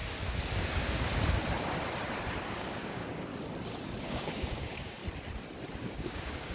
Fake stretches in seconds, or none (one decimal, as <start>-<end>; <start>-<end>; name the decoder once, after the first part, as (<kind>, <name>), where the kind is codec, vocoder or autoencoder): 0.7-1.1 (codec, DAC); 2.5-3.3; 4.0-5.0; 5.7-6.5